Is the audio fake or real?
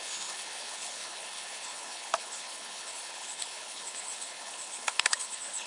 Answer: fake